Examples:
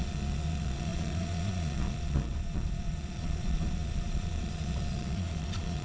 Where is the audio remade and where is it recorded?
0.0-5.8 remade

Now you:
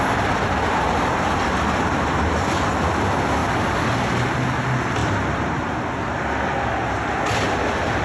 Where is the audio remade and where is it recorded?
0.0-8.0 recorded

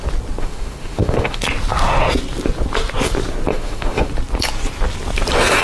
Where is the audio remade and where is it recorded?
0.0-0.4 recorded; 0.4-1.4 remade; 1.4-3.5 recorded; 3.5-4.1 remade; 4.1-5.6 recorded